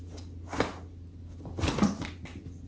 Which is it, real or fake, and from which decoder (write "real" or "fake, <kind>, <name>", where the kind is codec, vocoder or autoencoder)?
real